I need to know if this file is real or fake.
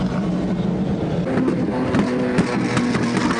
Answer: real